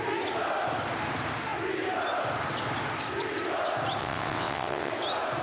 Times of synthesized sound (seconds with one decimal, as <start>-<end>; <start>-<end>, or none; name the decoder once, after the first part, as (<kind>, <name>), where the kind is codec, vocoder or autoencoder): 4.0-4.9 (vocoder, WaveNeXt)